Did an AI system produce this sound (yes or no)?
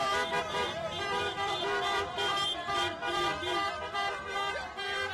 yes